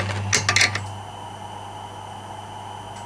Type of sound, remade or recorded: recorded